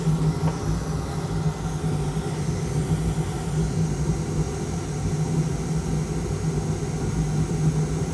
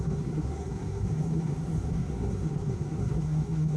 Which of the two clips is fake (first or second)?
second